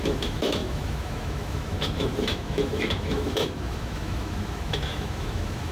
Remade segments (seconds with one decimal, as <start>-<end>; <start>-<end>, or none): 0.0-5.7